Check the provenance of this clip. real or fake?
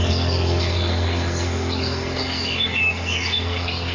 fake